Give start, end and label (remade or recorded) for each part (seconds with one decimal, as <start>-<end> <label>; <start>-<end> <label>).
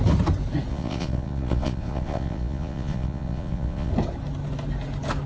0.0-0.7 recorded; 0.7-3.9 remade; 3.9-5.3 recorded